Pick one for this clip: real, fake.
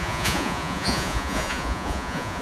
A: fake